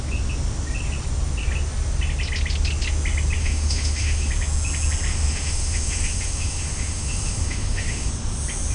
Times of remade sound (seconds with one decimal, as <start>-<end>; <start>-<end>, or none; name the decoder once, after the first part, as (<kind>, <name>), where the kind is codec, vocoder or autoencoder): 3.4-4.3 (autoencoder, DAC-VAE); 5.1-8.1